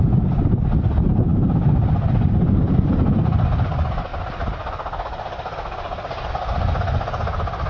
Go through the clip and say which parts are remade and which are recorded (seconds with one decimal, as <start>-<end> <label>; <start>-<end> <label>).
0.0-7.7 recorded